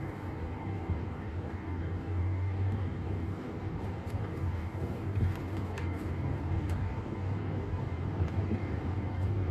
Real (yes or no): no